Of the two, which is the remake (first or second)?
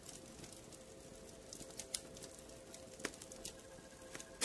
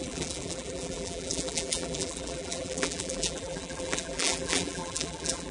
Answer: second